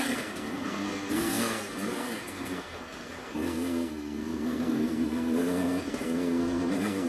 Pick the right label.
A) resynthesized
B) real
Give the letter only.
A